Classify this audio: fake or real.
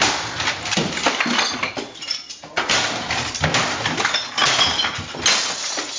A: real